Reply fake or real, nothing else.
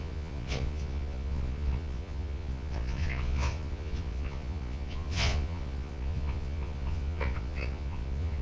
fake